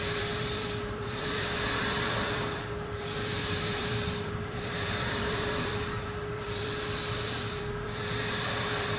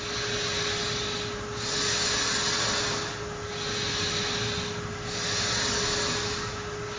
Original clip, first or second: second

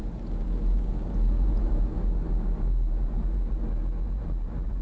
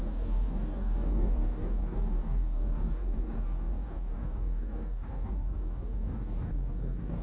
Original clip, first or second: first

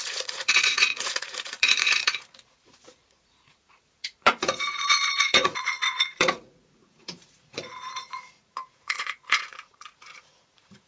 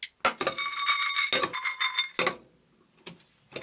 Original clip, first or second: second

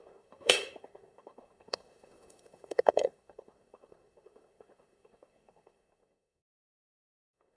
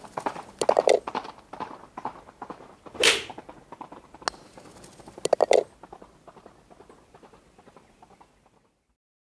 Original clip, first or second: second